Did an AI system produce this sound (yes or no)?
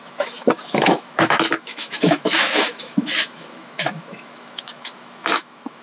yes